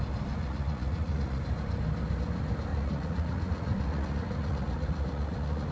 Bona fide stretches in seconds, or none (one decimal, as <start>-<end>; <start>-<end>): 0.0-0.4; 1.4-2.7

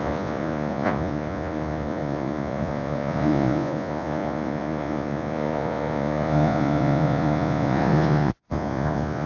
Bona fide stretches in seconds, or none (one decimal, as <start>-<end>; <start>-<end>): none

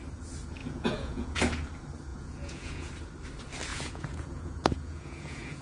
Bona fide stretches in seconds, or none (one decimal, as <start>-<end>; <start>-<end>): 0.0-0.6; 1.4-2.1; 2.9-3.7